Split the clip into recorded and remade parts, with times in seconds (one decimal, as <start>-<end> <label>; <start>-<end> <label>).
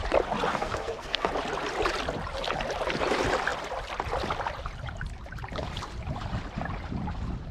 0.0-0.5 recorded; 0.5-1.3 remade; 1.3-7.5 recorded